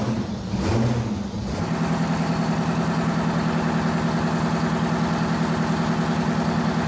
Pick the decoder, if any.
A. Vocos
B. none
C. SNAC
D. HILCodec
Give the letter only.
B